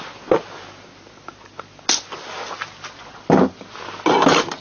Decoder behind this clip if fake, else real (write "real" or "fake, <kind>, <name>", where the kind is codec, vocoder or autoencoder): real